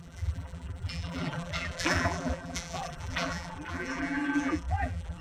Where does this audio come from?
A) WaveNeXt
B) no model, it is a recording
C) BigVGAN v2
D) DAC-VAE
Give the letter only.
C